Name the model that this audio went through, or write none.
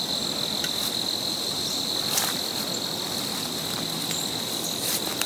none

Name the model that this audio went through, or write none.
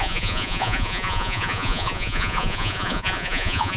vocoder, Vocos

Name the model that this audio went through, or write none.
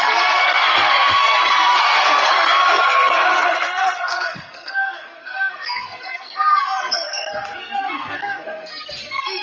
codec, SNAC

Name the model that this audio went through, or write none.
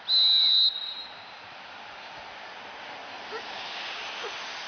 none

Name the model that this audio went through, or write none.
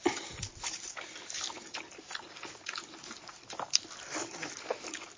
none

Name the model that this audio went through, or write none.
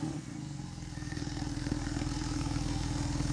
codec, SNAC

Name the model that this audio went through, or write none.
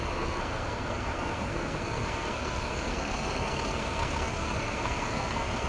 codec, SNAC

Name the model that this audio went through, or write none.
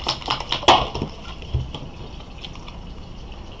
none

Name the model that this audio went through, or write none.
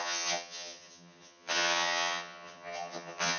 vocoder, HiFi-GAN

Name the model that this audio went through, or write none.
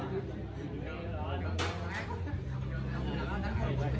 none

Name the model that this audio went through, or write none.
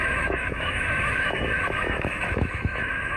autoencoder, DAC-VAE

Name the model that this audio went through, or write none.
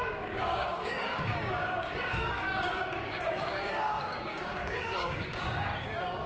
codec, DAC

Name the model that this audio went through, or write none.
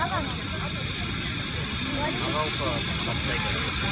none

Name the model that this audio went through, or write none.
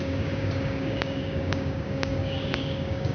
codec, DAC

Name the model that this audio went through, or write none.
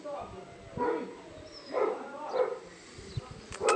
none